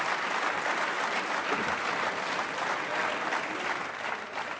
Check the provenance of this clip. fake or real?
real